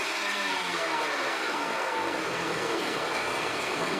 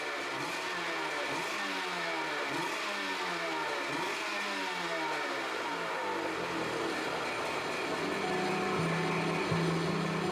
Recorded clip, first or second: second